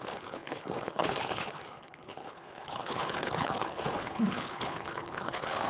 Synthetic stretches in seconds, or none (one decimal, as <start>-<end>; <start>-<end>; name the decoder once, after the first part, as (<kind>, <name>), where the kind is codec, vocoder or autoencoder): 0.0-5.7 (codec, HILCodec)